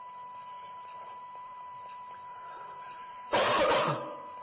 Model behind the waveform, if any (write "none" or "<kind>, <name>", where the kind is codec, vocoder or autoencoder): vocoder, BigVGAN v2